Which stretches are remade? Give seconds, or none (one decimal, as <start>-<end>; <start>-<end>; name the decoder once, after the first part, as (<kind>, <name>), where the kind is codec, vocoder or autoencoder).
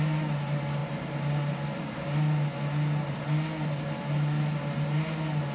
none